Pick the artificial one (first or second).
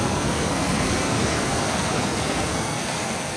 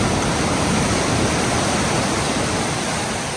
first